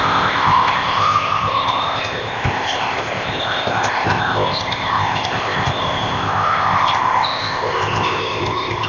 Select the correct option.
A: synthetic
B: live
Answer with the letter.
A